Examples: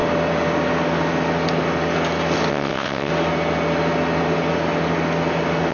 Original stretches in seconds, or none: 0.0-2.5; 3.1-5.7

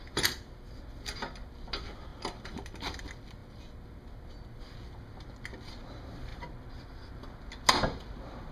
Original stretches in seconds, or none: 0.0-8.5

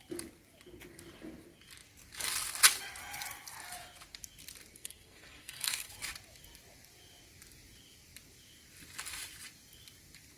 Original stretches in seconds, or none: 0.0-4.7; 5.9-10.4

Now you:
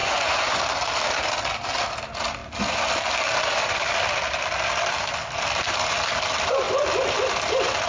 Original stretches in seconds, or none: 0.6-7.9